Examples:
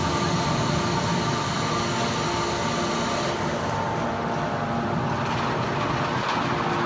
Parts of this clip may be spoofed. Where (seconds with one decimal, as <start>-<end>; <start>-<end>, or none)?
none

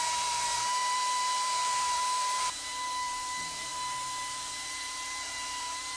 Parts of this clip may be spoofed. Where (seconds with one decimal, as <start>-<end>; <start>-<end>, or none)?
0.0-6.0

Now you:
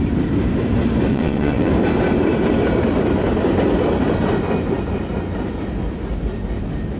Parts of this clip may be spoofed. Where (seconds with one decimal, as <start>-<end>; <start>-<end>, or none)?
1.1-1.7

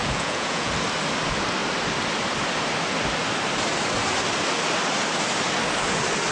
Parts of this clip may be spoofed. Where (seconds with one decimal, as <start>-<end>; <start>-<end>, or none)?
0.0-0.7

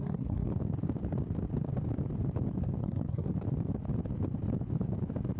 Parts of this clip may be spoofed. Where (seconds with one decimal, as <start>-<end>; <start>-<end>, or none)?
0.0-0.5; 2.8-3.3